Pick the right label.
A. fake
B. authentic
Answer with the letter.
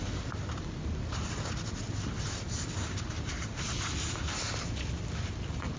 B